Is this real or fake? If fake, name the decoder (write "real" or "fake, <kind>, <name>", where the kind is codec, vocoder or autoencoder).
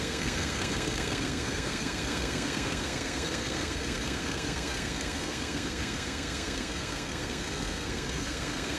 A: fake, codec, SNAC